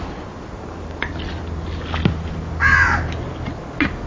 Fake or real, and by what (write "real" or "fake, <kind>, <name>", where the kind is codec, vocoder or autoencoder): real